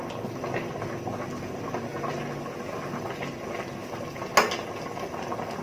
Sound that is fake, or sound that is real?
real